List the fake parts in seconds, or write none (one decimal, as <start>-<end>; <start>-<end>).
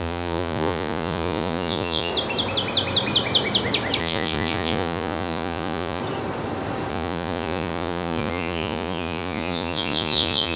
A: 0.0-2.1; 4.0-6.0; 6.9-10.6